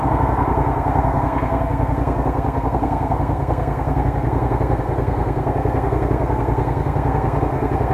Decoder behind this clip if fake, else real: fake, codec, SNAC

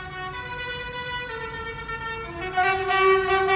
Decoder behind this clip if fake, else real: real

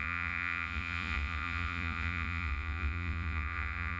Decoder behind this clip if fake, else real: fake, vocoder, Vocos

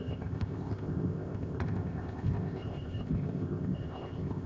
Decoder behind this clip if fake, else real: fake, codec, ZipCodec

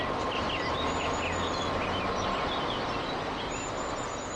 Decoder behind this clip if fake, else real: real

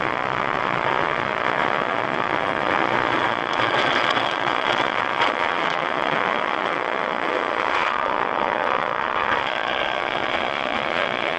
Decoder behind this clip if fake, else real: fake, vocoder, Vocos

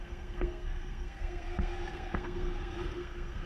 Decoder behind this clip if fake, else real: fake, codec, SNAC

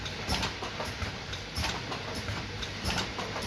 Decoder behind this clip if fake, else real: fake, vocoder, BigVGAN v2